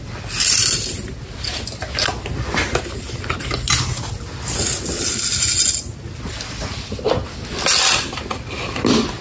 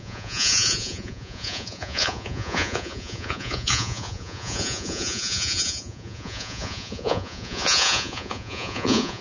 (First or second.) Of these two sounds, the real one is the first